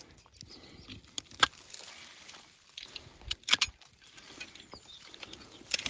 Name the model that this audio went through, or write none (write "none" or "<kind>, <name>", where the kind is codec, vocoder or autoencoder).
none